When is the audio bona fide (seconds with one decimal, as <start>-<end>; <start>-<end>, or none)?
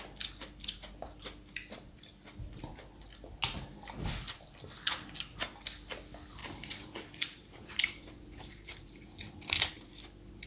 0.0-6.4; 9.9-10.5